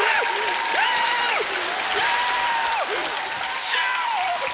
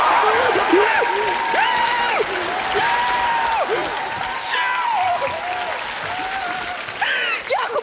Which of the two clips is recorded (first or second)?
second